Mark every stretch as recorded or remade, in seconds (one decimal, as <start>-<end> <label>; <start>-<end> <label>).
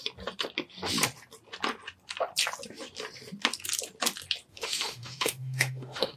0.0-4.5 recorded; 4.5-6.2 remade